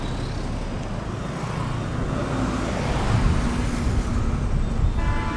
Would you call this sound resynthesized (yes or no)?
no